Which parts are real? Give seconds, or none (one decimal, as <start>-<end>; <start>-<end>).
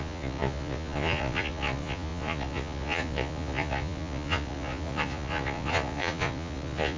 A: none